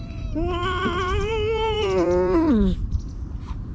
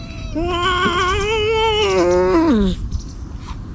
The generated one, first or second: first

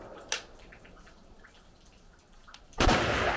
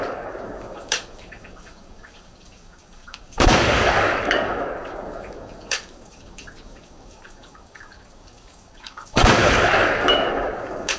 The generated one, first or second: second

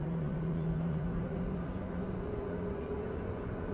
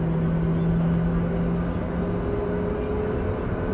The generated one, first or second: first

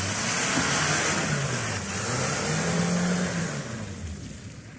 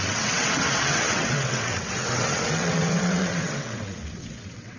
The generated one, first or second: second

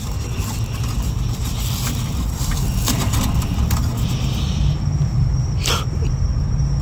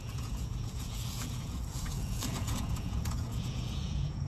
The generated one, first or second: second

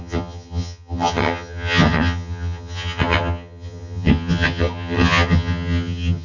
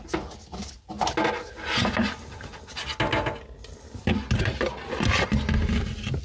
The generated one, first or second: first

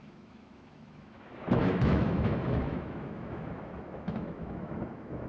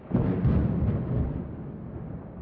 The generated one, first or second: first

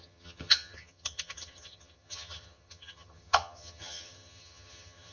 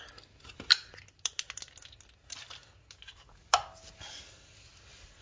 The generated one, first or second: first